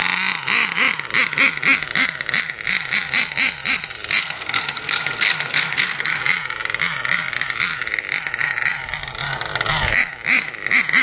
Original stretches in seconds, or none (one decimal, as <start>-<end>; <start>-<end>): 0.0-4.2; 6.2-11.0